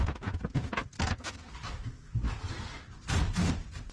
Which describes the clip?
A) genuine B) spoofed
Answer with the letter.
A